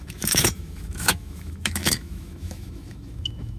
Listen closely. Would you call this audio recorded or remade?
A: remade